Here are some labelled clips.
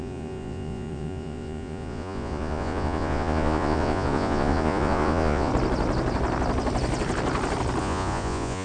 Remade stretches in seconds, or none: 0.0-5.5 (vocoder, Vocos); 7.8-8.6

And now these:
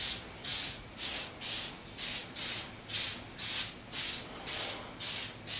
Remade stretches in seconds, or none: 0.4-1.3 (vocoder, Vocos)

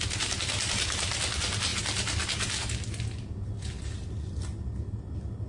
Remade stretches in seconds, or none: none

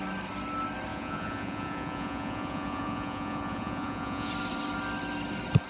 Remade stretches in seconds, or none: 0.9-4.3 (vocoder, Vocos)

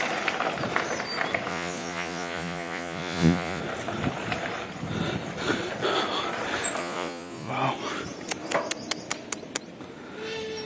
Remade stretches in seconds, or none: 1.5-3.6 (vocoder, Vocos); 6.8-7.5

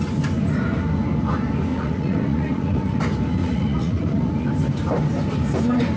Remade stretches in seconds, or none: 1.7-3.0 (vocoder, Vocos); 3.4-4.5

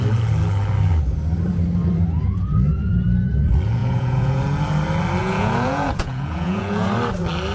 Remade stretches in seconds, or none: 3.8-4.4 (vocoder, Vocos); 5.2-6.9